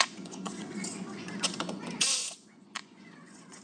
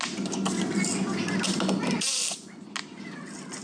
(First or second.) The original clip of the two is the second